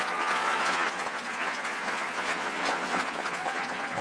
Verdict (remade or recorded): remade